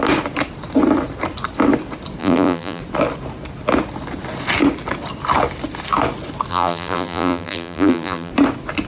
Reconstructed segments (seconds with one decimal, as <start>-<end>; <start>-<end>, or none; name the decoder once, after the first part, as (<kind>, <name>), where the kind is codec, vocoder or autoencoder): 2.2-2.8 (vocoder, BigVGAN v2); 6.5-8.3